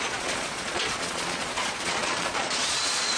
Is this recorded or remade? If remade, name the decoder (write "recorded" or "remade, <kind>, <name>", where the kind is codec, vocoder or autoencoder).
remade, vocoder, Vocos